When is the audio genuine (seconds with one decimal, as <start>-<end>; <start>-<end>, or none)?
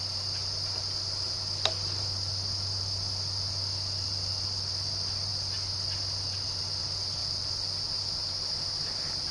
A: 0.0-9.3